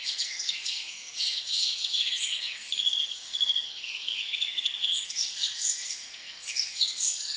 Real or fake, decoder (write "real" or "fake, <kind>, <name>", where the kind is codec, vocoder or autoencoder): fake, codec, SNAC